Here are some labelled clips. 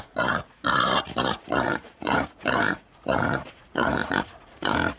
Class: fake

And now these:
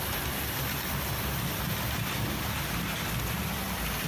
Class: real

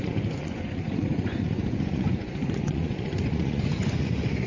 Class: fake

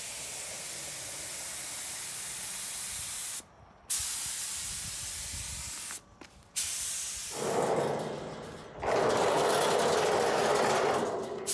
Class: real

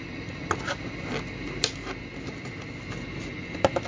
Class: real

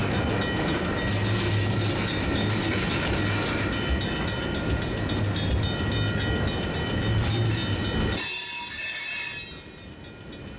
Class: real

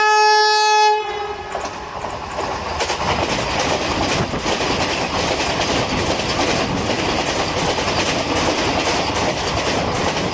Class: real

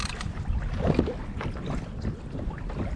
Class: real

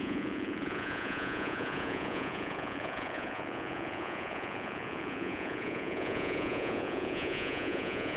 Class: fake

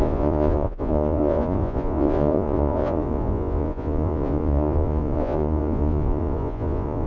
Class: fake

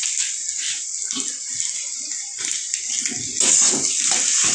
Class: real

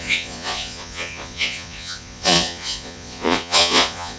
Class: fake